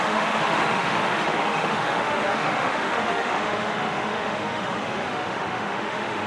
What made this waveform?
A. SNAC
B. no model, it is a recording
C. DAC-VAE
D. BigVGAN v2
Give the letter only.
C